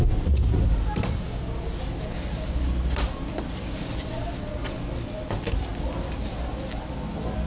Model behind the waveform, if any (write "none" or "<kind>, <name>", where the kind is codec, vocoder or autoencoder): none